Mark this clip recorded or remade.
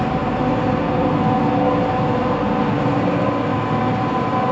recorded